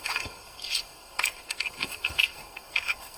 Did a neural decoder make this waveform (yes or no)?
yes